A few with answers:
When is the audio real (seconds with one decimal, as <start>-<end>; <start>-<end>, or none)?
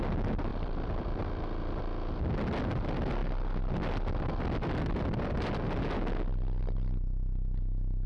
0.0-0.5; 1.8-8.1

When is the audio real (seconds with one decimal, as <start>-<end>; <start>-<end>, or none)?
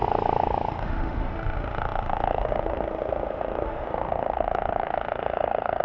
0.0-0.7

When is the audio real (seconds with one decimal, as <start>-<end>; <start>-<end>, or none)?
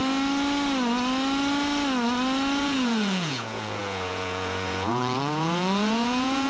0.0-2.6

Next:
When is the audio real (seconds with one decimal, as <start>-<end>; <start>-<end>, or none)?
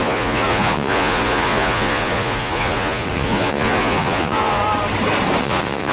4.6-5.4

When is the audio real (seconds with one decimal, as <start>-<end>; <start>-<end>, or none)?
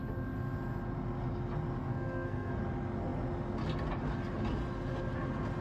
0.0-1.8; 2.6-5.6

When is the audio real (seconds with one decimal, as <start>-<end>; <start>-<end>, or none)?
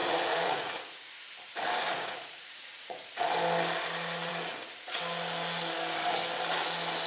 1.1-1.9; 3.1-4.3; 5.0-7.1